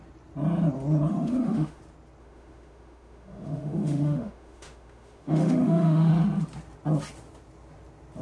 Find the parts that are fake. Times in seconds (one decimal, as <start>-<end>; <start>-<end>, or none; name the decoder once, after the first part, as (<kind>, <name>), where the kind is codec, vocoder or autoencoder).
1.1-1.8 (autoencoder, DAC-VAE); 2.2-6.1

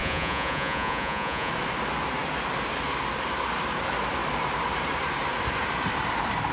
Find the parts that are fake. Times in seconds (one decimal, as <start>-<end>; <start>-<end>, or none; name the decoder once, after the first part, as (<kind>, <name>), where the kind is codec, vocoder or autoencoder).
0.0-1.5 (vocoder, Vocos)

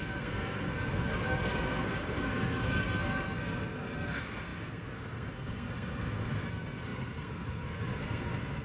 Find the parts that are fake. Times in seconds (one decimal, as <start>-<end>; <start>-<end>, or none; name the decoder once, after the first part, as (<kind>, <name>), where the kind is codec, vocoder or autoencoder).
0.0-8.6 (codec, SNAC)

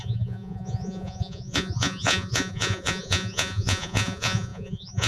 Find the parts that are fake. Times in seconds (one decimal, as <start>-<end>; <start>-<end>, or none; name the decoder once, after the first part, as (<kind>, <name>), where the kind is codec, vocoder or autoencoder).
0.0-5.1 (vocoder, Vocos)

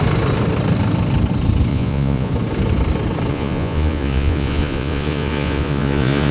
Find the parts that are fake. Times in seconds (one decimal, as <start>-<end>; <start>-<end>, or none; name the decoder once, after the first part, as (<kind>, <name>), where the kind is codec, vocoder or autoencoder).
1.7-2.3 (vocoder, Vocos); 3.3-6.3

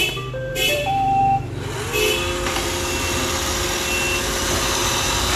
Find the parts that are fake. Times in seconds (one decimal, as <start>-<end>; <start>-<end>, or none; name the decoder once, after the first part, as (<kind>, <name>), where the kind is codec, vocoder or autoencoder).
0.5-1.2 (vocoder, BigVGAN v2); 4.4-5.4